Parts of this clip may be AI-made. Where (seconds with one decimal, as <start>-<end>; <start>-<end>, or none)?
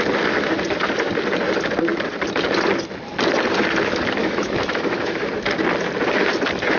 4.2-5.3